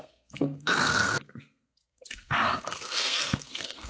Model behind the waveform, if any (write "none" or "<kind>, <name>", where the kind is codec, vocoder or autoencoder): codec, SNAC